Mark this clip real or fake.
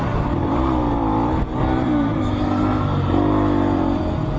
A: real